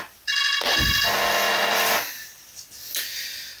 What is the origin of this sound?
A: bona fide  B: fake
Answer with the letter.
A